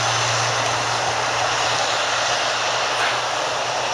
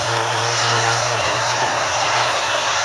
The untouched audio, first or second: first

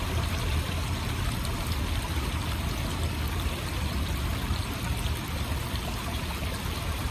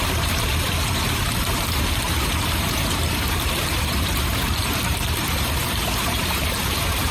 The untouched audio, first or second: first